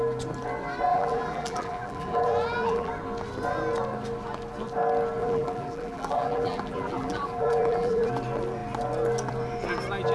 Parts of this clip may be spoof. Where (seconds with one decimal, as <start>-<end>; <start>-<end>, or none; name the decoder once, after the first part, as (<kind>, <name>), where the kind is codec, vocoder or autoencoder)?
0.9-2.9 (vocoder, BigVGAN v2); 5.2-8.1